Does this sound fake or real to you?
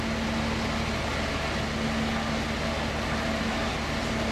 real